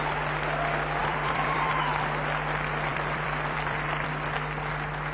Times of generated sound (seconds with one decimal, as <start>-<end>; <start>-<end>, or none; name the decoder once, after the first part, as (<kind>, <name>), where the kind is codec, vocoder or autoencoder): 1.0-1.8 (vocoder, BigVGAN v2); 2.9-4.1

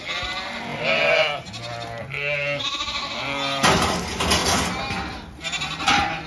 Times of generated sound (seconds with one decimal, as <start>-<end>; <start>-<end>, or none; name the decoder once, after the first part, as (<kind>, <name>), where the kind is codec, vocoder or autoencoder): none

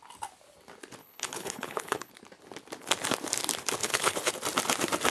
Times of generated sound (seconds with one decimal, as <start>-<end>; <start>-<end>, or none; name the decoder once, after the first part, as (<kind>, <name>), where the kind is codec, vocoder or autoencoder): 1.0-2.1 (codec, HILCodec); 3.8-4.3